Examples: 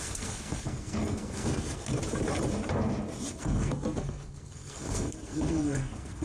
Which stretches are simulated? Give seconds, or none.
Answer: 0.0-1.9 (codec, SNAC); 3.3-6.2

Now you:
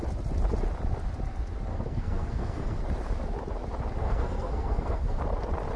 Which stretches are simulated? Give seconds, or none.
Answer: 1.7-2.8 (codec, SNAC); 4.0-5.2

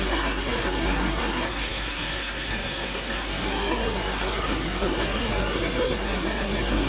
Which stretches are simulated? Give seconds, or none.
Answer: 0.0-6.9 (codec, SNAC)

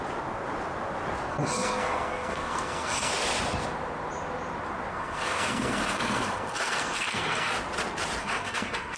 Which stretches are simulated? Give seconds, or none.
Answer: 1.3-3.1 (codec, SNAC); 4.9-7.5; 8.2-9.0

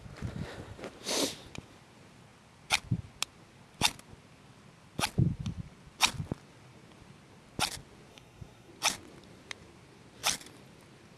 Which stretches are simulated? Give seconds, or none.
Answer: 8.1-8.7 (codec, SNAC)

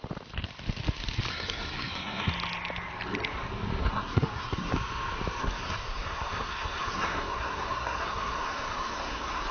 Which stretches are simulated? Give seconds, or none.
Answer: 1.3-2.3 (codec, SNAC); 3.8-4.7; 5.4-9.5

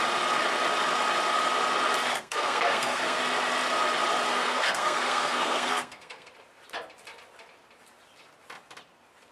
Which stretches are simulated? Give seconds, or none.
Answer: 2.1-3.2 (codec, SNAC); 4.3-6.3

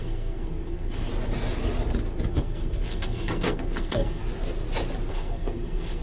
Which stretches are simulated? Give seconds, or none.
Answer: 0.0-1.1 (codec, SNAC); 2.3-4.2; 5.1-6.0